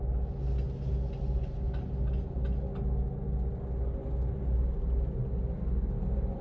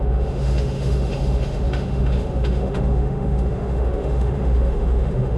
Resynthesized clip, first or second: second